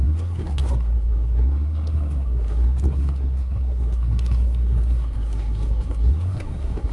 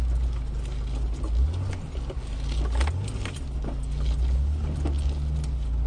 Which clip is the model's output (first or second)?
first